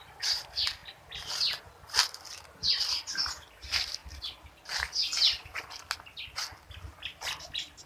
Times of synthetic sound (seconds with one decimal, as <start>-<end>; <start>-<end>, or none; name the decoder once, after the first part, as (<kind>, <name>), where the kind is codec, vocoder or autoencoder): none